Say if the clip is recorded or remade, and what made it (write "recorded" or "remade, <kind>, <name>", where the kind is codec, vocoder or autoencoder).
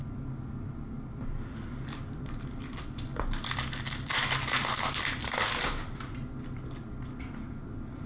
recorded